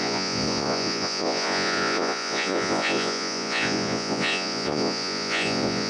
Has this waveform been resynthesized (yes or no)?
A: yes